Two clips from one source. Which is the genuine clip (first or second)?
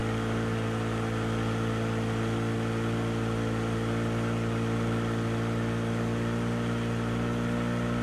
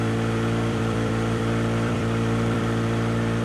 first